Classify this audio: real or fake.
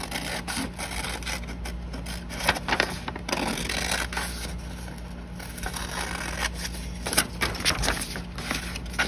real